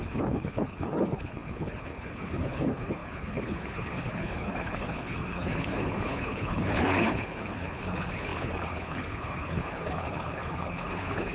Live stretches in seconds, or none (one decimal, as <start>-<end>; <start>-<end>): none